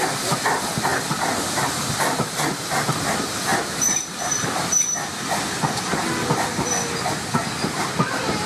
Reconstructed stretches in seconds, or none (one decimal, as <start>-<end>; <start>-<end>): 0.9-2.6; 3.5-5.2